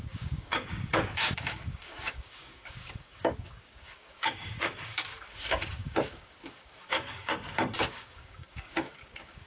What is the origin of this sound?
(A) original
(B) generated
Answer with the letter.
B